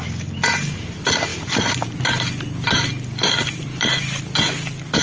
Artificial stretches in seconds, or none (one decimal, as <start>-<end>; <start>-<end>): none